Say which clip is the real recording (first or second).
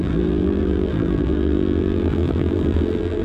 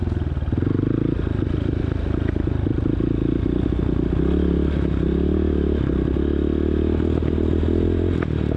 second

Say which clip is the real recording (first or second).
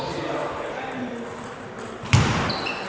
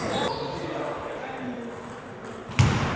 second